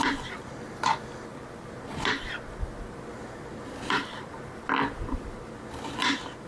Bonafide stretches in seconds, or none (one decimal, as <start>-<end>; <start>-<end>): 0.0-6.5